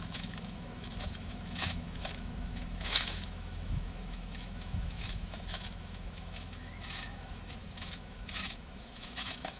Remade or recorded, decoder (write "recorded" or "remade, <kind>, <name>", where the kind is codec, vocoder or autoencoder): remade, autoencoder, DAC-VAE